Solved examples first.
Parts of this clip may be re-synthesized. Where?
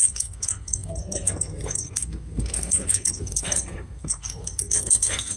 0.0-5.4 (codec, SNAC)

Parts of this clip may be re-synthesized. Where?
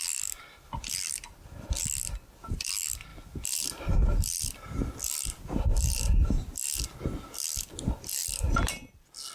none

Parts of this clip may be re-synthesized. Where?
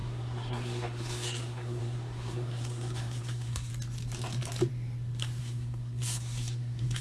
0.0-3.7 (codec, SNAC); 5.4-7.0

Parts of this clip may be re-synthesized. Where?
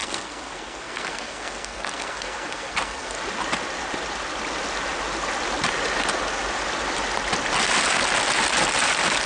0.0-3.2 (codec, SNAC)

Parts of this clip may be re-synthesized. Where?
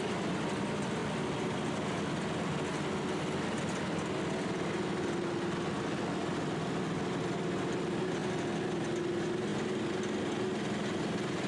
none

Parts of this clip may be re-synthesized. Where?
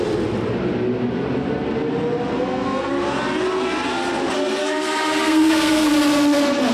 2.3-2.9 (codec, SNAC); 4.6-5.9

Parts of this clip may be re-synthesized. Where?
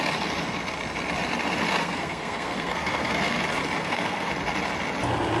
1.8-3.4 (codec, SNAC); 3.8-4.3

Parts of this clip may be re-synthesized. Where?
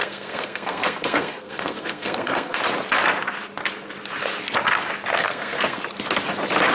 0.0-2.6 (codec, SNAC); 5.2-5.8